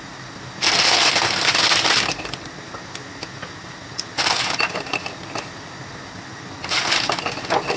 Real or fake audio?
real